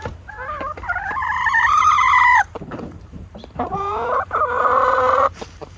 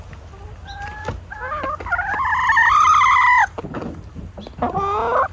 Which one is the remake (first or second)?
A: first